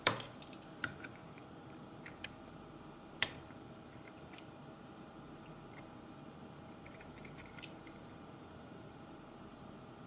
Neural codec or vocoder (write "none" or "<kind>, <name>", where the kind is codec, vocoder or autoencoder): vocoder, BigVGAN v2